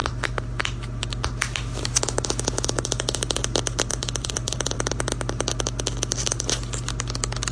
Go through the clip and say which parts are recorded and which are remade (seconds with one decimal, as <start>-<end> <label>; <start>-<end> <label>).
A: 0.0-3.9 recorded; 3.9-5.4 remade; 5.4-7.5 recorded